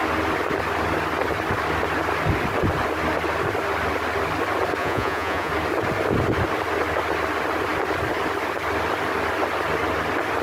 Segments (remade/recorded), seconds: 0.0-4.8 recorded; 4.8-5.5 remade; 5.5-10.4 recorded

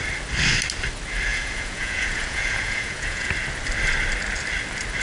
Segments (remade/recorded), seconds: 0.0-1.3 recorded; 1.3-3.3 remade; 3.3-5.0 recorded

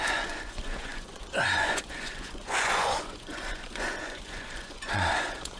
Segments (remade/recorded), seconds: 0.0-5.6 remade

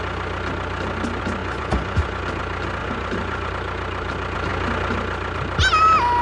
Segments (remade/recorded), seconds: 0.0-1.4 recorded; 1.4-2.2 remade; 2.2-2.8 recorded; 2.8-3.5 remade; 3.5-6.2 recorded

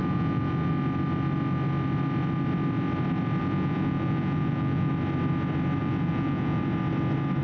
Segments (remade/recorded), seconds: 0.0-0.7 remade; 0.7-3.4 recorded; 3.4-4.9 remade; 4.9-5.8 recorded; 5.8-6.6 remade; 6.6-7.4 recorded

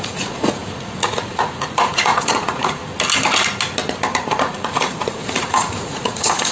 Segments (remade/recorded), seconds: 0.0-2.8 remade; 2.8-4.3 recorded; 4.3-6.5 remade

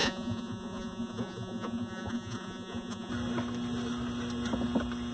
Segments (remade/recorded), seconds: 0.0-3.1 remade; 3.1-5.1 recorded

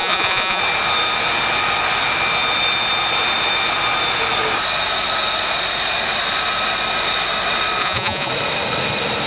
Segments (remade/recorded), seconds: 0.0-0.6 remade; 0.6-7.8 recorded; 7.8-8.3 remade; 8.3-9.3 recorded